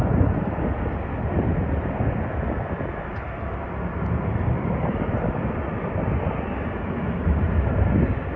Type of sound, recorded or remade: recorded